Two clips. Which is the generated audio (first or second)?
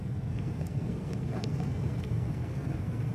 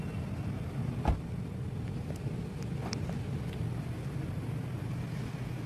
first